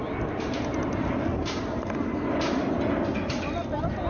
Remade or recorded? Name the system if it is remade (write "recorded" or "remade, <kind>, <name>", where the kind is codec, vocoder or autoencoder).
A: recorded